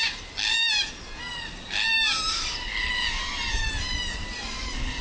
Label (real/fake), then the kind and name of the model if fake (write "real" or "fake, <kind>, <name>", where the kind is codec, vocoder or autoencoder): real